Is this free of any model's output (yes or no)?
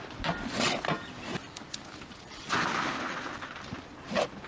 yes